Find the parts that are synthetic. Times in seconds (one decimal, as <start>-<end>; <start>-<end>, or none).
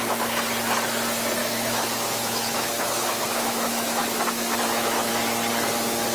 1.4-5.1